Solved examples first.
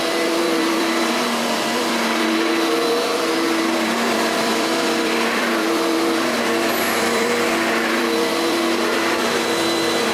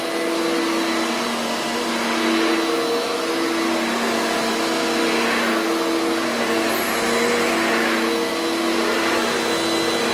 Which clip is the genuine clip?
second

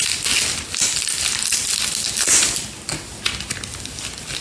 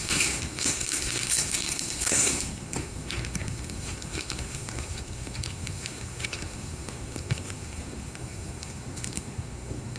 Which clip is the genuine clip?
first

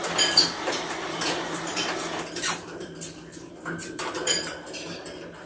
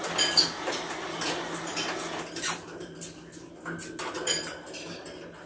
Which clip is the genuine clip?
second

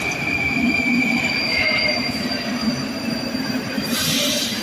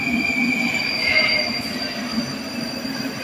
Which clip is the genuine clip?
second